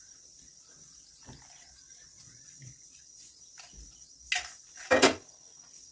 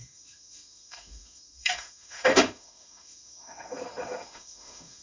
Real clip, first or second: first